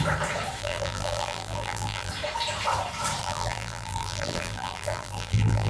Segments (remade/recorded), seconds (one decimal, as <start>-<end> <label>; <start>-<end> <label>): 0.0-0.6 recorded; 0.6-2.1 remade; 2.1-3.2 recorded; 3.2-5.7 remade